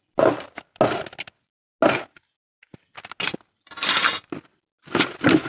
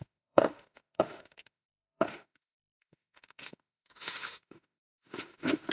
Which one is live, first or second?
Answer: first